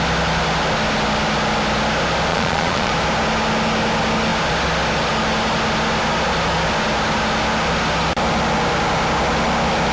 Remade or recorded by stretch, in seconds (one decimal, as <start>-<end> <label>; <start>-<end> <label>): 0.0-2.3 recorded; 2.3-2.9 remade; 2.9-9.9 recorded